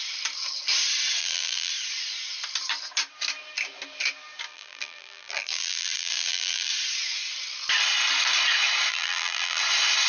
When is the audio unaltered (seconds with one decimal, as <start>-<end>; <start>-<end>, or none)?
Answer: 0.0-1.2; 1.7-4.5; 6.7-8.9; 9.6-10.1